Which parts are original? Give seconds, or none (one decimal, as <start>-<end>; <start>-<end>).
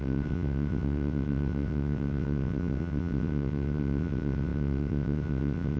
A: none